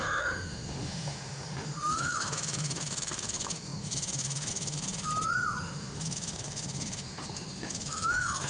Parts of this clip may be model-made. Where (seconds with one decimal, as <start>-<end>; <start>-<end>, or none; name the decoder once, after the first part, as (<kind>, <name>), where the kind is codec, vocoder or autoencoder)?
0.0-5.1 (autoencoder, DAC-VAE); 5.6-8.5